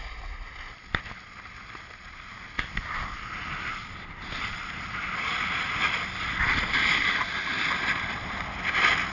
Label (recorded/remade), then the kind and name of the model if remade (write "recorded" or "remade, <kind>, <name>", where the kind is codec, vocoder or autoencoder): recorded